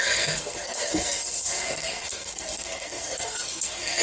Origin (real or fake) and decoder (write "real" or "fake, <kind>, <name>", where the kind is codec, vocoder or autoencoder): fake, codec, SNAC